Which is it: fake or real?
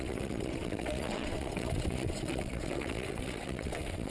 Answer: fake